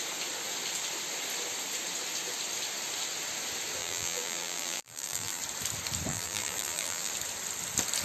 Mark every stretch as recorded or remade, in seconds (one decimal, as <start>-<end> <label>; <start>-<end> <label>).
0.0-3.8 recorded; 3.8-5.4 remade; 5.4-6.1 recorded; 6.1-7.1 remade; 7.1-8.0 recorded

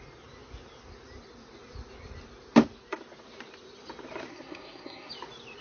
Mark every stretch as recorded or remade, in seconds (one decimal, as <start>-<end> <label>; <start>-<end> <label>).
0.0-4.3 recorded; 4.3-5.1 remade; 5.1-5.6 recorded

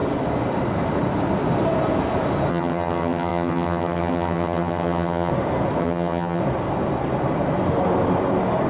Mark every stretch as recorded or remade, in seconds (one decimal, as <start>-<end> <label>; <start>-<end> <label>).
0.0-2.5 recorded; 2.5-5.3 remade; 5.3-5.8 recorded; 5.8-6.4 remade; 6.4-8.7 recorded

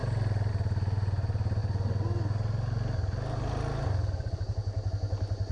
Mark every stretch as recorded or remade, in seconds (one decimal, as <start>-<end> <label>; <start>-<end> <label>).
0.0-5.5 recorded

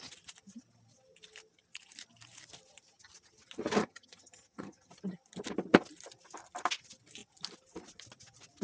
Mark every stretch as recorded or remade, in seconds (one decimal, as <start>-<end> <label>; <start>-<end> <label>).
0.0-3.8 recorded; 3.8-4.9 remade; 4.9-8.6 recorded

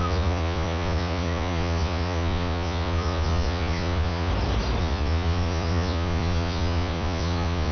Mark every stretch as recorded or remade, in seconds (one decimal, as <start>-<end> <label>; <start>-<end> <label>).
0.0-4.3 remade; 4.3-4.8 recorded; 4.8-7.7 remade

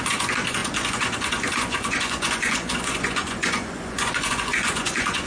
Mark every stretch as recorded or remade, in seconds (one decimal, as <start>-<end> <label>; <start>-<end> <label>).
0.0-5.3 remade

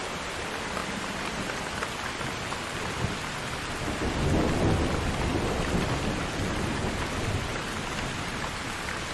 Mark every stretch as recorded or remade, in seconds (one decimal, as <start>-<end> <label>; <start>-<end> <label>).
0.0-9.1 recorded